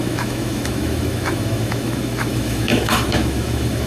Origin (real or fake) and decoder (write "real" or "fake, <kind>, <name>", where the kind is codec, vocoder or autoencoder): fake, autoencoder, DAC-VAE